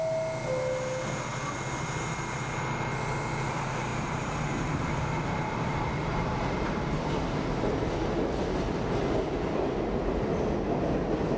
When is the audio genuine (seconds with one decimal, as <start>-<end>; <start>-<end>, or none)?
0.0-3.9; 7.6-11.4